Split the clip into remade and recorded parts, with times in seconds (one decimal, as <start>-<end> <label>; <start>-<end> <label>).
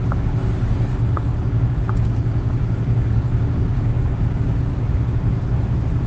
0.0-0.9 recorded; 0.9-4.6 remade; 4.6-6.1 recorded